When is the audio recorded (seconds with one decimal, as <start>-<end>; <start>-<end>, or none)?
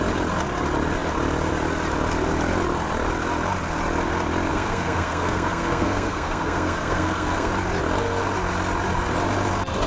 0.0-4.5; 7.5-9.9